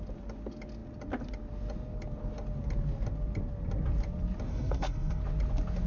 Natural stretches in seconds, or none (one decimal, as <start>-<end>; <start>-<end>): 0.0-4.5; 5.2-5.9